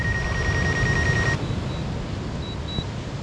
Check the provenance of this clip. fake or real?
real